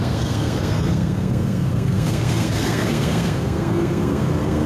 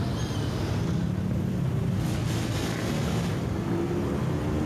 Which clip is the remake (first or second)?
first